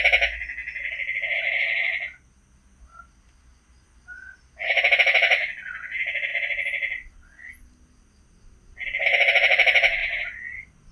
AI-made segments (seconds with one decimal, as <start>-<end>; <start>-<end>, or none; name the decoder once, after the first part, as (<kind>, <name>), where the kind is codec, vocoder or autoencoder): 10.0-10.9 (vocoder, BigVGAN v2)